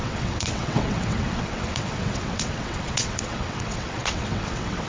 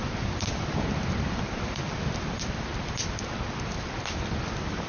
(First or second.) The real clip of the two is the second